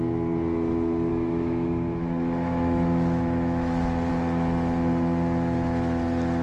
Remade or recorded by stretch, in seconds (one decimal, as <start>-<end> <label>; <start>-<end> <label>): 0.0-1.1 recorded; 1.1-4.1 remade; 4.1-6.4 recorded